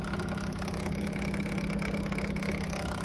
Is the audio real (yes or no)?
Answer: no